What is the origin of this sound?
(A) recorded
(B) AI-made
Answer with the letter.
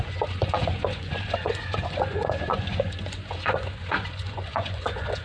B